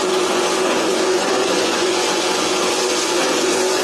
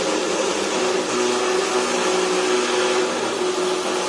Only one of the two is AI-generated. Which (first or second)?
first